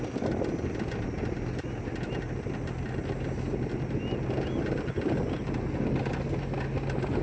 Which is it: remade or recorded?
recorded